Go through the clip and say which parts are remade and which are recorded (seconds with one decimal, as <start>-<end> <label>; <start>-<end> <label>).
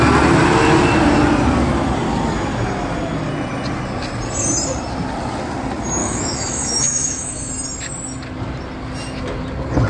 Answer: 0.0-6.0 recorded; 6.0-7.5 remade; 7.5-9.9 recorded